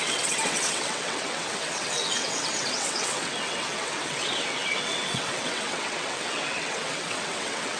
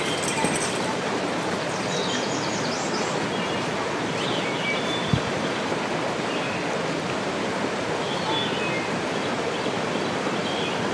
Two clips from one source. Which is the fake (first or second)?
first